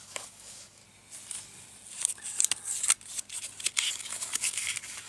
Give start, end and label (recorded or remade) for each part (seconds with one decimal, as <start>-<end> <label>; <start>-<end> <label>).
0.0-0.8 remade; 0.8-3.9 recorded; 3.9-5.1 remade